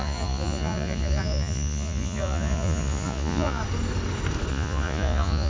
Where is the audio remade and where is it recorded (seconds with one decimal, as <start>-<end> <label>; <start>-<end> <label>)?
0.0-3.6 remade; 3.6-4.5 recorded; 4.5-5.5 remade